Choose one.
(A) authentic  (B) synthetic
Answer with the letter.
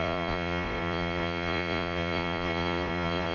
B